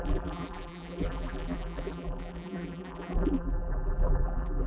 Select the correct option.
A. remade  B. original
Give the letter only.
A